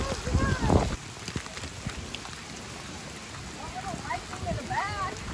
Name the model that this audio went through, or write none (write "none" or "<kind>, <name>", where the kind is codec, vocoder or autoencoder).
none